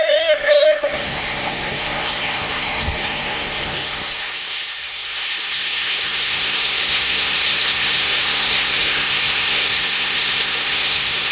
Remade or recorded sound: remade